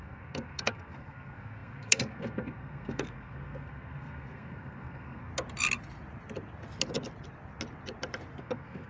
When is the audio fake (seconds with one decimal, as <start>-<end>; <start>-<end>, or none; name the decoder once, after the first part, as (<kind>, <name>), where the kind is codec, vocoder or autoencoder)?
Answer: 0.0-5.3 (codec, SNAC); 8.4-8.9